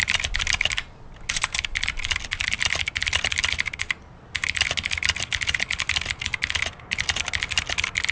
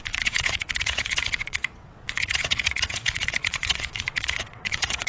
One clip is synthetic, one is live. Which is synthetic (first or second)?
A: second